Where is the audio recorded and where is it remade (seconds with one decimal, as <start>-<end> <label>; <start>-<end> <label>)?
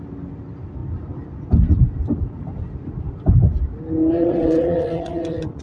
0.0-4.2 recorded; 4.2-5.6 remade